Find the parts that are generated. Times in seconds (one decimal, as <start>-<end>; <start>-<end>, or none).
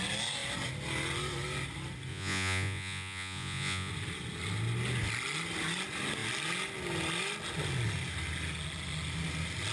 2.1-3.9